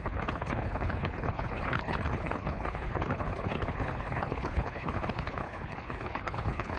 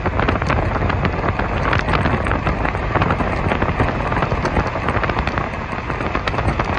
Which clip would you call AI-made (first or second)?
first